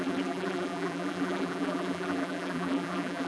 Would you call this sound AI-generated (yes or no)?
yes